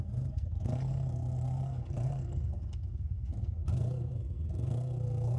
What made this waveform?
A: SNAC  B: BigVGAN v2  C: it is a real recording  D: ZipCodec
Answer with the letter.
A